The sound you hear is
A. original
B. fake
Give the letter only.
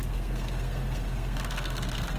B